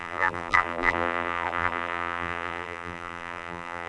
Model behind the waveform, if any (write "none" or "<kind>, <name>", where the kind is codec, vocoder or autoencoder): vocoder, BigVGAN v2